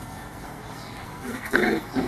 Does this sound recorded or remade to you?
remade